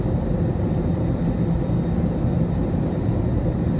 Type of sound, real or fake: real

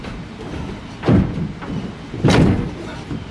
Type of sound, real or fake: real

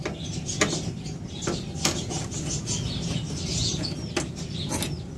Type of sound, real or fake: real